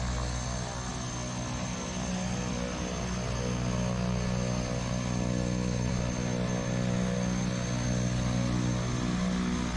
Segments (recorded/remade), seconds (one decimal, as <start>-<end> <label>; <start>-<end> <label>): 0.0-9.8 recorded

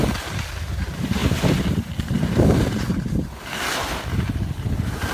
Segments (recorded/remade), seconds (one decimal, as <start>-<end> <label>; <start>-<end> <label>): 0.0-5.1 recorded

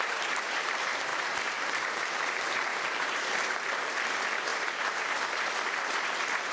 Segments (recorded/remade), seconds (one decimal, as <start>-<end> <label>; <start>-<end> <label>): 0.0-2.7 recorded; 2.7-3.5 remade; 3.5-4.5 recorded; 4.5-5.0 remade; 5.0-6.5 recorded